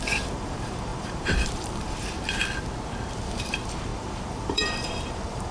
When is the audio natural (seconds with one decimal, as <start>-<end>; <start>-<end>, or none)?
2.4-3.1